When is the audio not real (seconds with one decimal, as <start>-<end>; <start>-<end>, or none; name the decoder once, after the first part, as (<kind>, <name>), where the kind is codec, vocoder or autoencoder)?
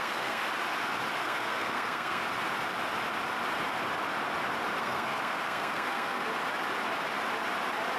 0.0-0.4 (codec, SNAC); 1.2-2.2; 4.8-6.2